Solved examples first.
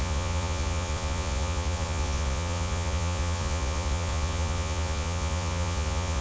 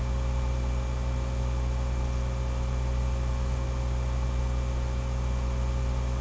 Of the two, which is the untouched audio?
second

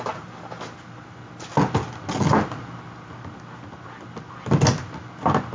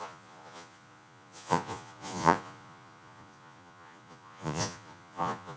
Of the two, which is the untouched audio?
first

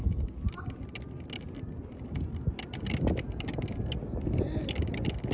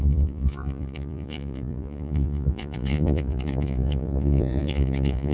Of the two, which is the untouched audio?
first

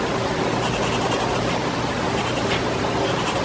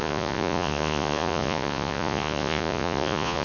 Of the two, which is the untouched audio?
first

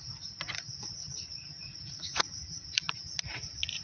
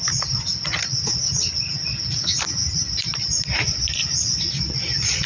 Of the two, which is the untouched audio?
second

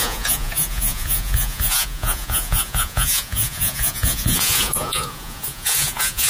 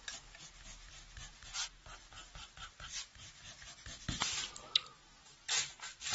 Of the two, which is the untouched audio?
second